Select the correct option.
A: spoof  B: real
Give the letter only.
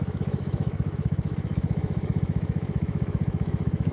A